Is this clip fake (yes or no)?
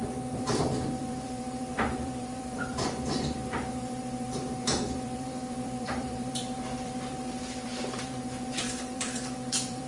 yes